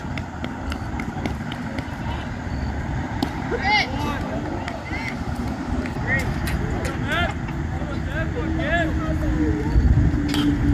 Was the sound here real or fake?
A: real